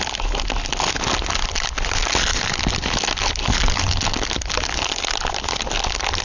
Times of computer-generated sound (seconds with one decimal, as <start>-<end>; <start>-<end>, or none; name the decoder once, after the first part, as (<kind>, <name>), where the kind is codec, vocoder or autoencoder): none